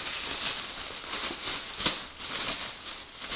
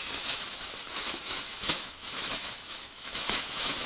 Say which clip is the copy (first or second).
second